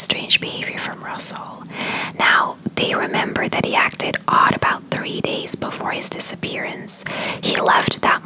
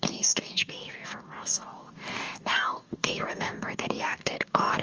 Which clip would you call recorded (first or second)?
first